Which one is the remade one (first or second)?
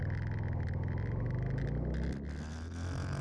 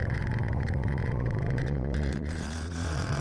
second